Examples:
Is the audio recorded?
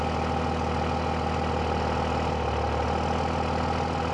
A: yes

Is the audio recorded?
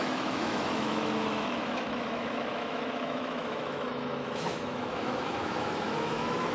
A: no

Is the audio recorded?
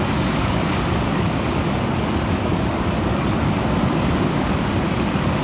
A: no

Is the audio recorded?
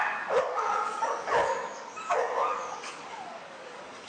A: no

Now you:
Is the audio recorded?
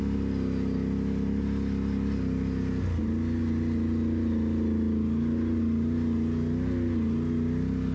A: yes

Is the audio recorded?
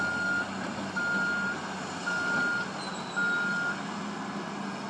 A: yes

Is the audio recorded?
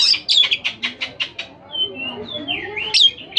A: yes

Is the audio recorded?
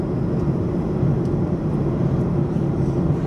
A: yes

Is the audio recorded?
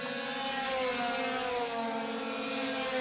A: yes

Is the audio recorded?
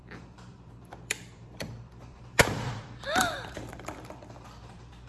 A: no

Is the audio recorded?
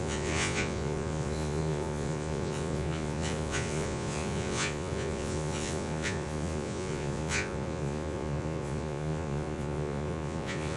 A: no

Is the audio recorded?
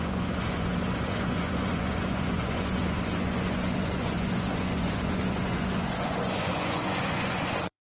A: no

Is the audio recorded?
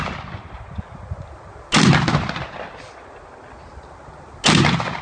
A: yes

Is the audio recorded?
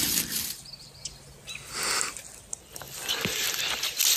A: yes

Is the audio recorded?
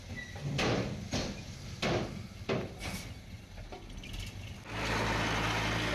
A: yes